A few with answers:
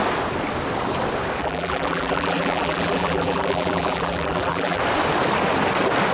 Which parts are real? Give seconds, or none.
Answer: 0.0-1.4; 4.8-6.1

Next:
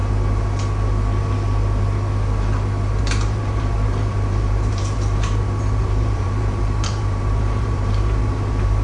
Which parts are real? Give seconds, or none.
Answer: 0.0-3.0